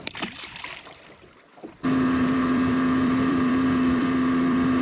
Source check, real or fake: fake